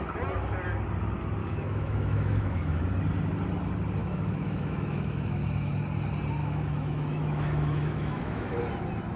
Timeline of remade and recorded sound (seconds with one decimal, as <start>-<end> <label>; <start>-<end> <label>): 0.0-1.4 recorded; 1.4-2.8 remade; 2.8-4.0 recorded; 4.0-5.7 remade; 5.7-6.4 recorded; 6.4-8.5 remade; 8.5-9.2 recorded